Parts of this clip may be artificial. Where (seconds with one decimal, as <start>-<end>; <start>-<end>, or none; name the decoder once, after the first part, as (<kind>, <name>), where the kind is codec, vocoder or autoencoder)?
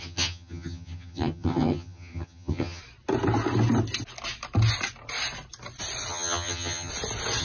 0.0-2.8 (vocoder, HiFi-GAN); 6.1-6.9